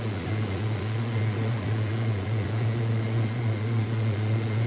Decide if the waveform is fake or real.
fake